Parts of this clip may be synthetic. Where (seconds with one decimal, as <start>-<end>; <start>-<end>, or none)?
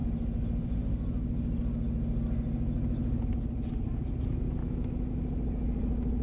4.6-5.1